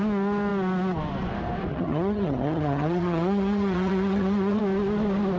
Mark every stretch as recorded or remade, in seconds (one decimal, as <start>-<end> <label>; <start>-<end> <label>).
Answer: 0.0-1.7 recorded; 1.7-4.6 remade; 4.6-5.4 recorded